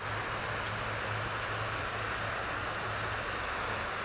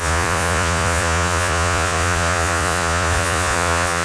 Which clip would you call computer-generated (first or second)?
second